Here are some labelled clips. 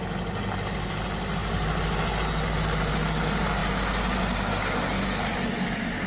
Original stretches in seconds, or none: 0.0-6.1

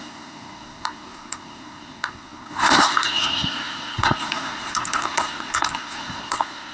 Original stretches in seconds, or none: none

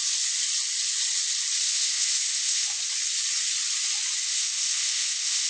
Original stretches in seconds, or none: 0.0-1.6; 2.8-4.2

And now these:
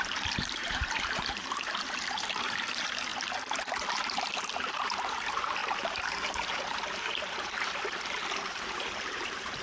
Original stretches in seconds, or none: 3.1-3.9

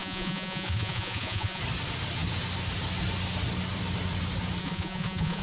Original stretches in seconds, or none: 1.6-4.6

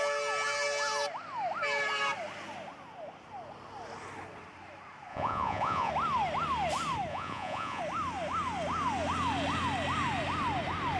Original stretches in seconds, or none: 0.0-5.1; 5.9-7.1; 7.8-11.0

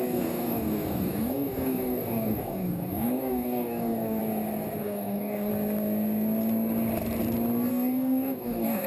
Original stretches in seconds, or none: 4.2-4.8; 5.5-7.7